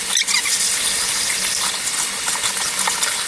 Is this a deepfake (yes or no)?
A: no